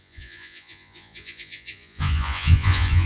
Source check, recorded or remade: remade